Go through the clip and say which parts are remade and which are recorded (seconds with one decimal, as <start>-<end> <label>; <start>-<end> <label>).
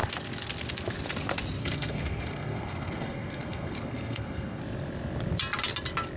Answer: 0.0-1.6 recorded; 1.6-4.6 remade; 4.6-6.2 recorded